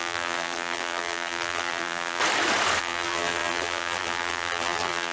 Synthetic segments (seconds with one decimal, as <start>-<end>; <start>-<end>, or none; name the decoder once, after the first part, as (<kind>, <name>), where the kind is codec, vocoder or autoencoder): 0.0-2.2 (vocoder, BigVGAN v2); 2.8-5.1